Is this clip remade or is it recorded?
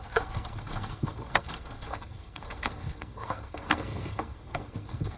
remade